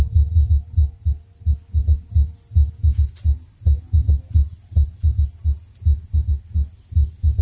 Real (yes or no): yes